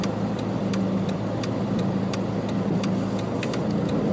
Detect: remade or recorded remade